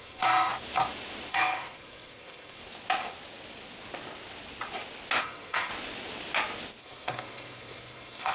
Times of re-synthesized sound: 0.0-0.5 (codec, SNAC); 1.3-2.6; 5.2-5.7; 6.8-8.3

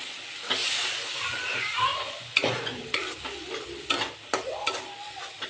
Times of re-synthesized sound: 0.6-1.8 (vocoder, Vocos); 2.2-2.8